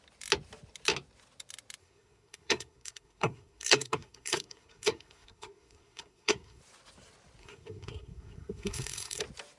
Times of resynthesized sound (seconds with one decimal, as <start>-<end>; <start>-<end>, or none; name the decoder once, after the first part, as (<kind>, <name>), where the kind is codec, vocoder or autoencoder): 1.8-6.6 (codec, SNAC); 7.4-9.2